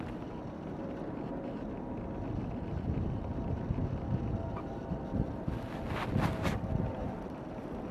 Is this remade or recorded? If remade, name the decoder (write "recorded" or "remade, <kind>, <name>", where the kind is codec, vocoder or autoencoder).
recorded